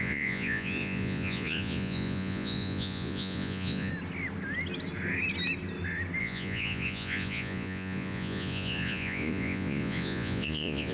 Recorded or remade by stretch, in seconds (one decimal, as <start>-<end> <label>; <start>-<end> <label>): 0.0-3.9 remade; 3.9-6.2 recorded; 6.2-10.9 remade